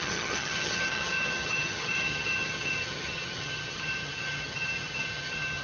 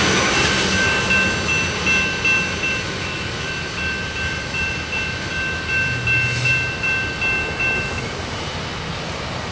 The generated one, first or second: first